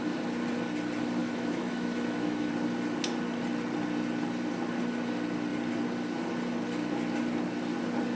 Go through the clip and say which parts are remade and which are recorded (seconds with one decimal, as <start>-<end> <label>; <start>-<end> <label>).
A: 0.0-1.2 recorded; 1.2-2.5 remade; 2.5-8.2 recorded